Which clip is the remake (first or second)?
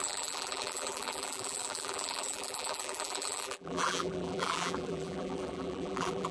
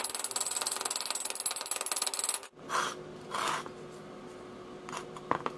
first